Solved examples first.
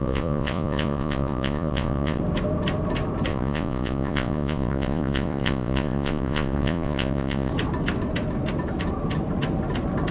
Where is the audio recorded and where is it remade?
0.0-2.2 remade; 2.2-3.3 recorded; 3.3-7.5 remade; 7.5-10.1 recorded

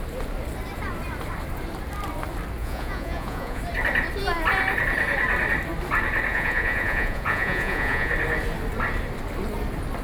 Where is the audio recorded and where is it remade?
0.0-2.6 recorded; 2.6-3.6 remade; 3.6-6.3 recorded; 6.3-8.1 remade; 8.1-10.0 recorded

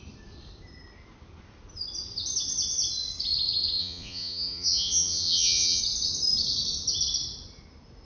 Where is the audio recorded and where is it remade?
0.0-3.8 recorded; 3.8-5.8 remade; 5.8-8.0 recorded

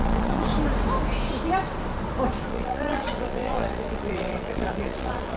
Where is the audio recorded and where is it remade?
0.0-0.5 remade; 0.5-2.5 recorded; 2.5-5.4 remade

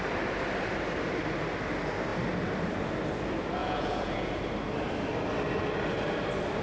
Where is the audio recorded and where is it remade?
0.0-3.6 recorded; 3.6-4.3 remade; 4.3-6.6 recorded

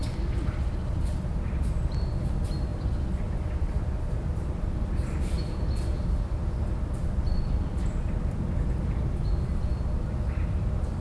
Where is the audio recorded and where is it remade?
0.0-11.0 recorded

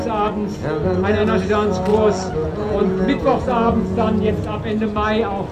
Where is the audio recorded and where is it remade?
0.0-1.9 recorded; 1.9-4.3 remade; 4.3-5.5 recorded

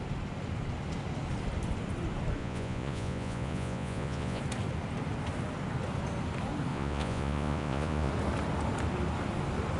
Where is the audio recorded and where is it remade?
0.0-2.4 recorded; 2.4-4.4 remade; 4.4-6.7 recorded; 6.7-8.1 remade; 8.1-9.8 recorded